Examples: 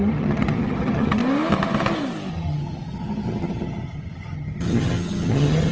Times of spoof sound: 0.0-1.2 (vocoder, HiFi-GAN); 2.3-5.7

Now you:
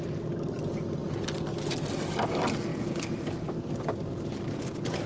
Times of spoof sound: none

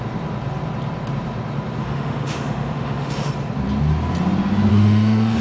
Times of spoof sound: 1.8-3.3 (autoencoder, DAC-VAE); 4.7-5.4

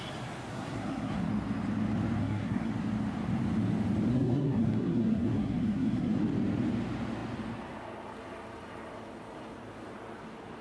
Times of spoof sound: 0.5-1.3 (codec, SNAC); 2.2-2.7; 4.1-6.2